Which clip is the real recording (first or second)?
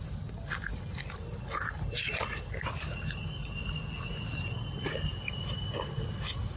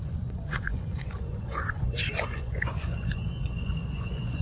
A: first